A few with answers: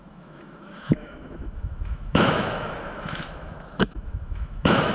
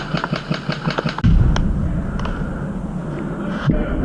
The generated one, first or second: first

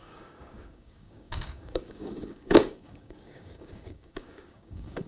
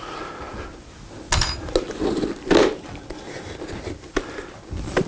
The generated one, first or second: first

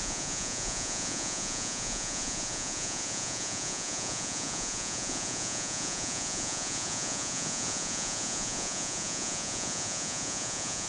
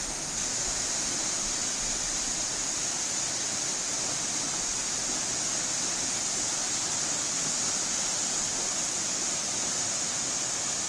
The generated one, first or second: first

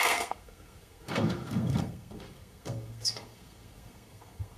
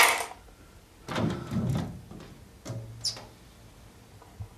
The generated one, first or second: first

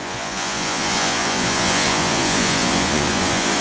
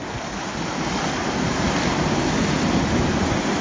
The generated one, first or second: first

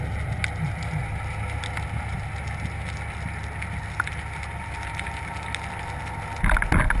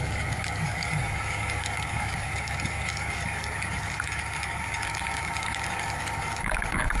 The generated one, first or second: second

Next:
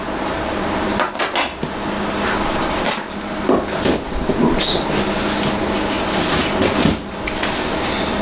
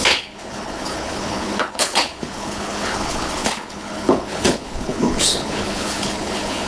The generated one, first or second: second